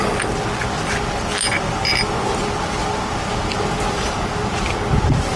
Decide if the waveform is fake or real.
real